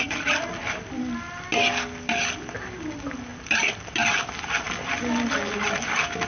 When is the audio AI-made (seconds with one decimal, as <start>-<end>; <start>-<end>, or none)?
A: none